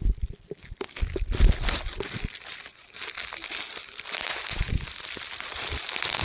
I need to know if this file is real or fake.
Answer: real